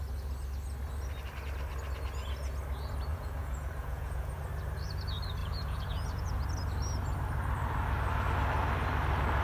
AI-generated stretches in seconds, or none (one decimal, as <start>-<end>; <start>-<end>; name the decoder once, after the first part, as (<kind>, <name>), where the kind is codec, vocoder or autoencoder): 3.1-4.4 (vocoder, Vocos); 5.4-6.4